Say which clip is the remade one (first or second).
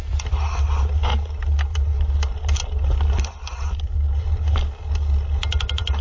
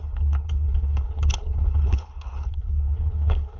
second